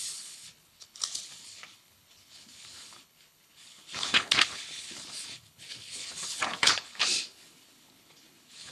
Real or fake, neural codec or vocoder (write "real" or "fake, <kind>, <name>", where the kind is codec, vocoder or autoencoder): fake, codec, HILCodec